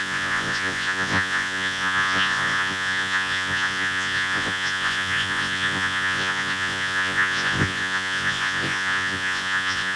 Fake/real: fake